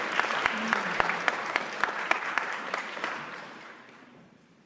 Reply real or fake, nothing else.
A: fake